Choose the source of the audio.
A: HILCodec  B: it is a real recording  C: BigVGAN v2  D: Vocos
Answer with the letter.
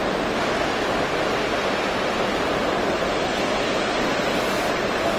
B